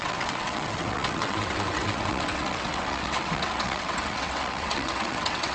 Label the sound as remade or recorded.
remade